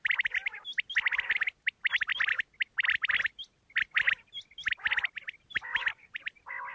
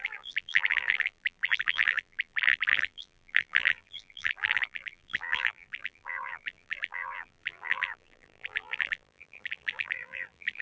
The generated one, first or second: second